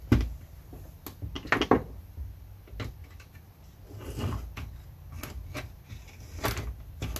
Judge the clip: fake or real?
real